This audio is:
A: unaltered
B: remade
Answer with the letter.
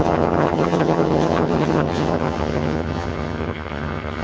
B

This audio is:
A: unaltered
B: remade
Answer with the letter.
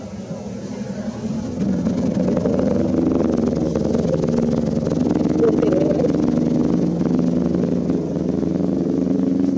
A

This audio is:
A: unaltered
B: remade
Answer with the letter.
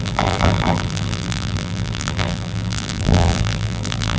B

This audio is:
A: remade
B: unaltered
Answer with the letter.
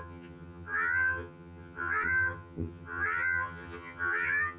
A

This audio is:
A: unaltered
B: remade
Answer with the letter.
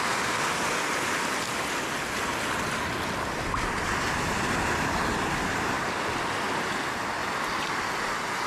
A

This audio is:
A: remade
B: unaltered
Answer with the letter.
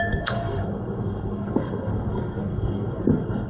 A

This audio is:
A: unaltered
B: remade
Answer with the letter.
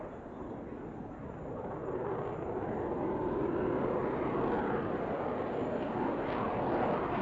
A